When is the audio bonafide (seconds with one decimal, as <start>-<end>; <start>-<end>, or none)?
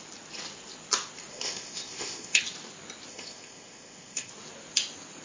0.0-1.3; 2.4-3.1; 4.3-5.2